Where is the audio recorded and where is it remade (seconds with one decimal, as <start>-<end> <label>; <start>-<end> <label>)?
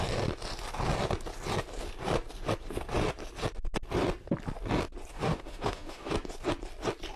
0.0-5.1 recorded; 5.1-6.1 remade; 6.1-7.2 recorded